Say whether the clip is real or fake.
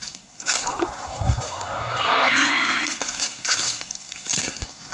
fake